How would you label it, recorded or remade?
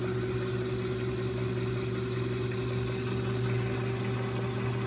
recorded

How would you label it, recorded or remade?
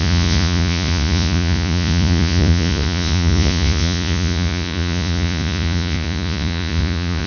remade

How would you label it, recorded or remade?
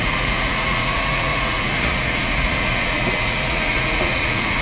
remade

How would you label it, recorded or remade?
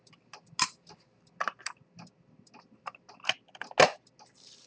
recorded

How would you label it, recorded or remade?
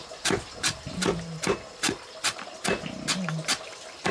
recorded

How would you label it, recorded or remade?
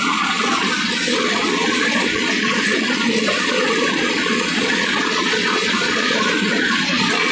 remade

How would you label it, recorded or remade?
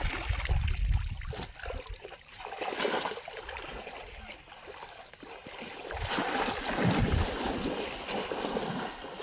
recorded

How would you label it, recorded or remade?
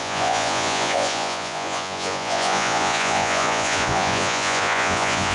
remade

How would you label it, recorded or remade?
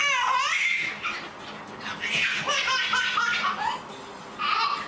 recorded